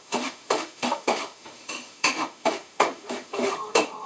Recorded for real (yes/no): no